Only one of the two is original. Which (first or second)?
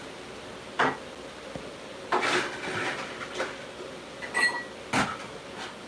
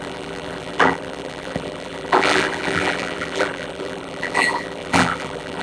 first